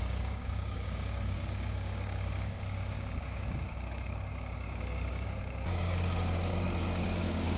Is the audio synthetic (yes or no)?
yes